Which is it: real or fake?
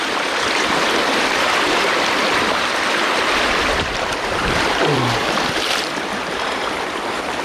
fake